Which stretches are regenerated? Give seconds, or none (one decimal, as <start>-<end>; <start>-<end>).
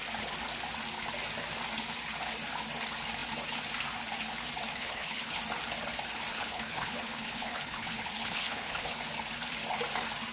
4.7-5.4; 6.3-9.0